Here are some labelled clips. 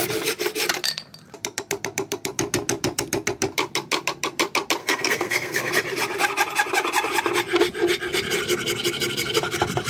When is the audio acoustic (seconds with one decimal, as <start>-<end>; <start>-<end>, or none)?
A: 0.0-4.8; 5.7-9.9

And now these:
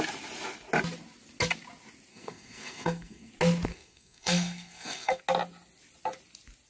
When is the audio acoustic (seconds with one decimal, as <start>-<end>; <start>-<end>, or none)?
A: 0.0-2.1; 3.3-3.7; 5.2-6.7

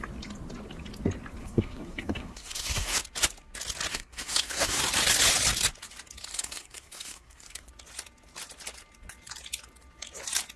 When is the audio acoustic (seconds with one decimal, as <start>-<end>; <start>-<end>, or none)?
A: 0.0-1.4; 3.0-3.9; 4.8-6.3; 7.7-10.6

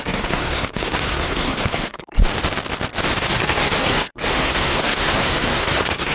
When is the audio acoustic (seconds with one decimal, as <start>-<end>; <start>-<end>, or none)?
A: 2.2-3.3

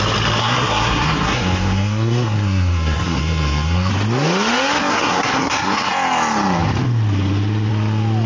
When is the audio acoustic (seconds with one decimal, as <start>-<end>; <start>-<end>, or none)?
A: 0.0-0.4; 3.9-4.9; 5.9-8.3

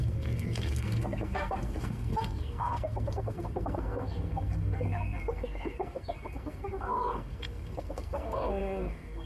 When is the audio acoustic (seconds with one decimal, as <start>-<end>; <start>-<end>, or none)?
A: none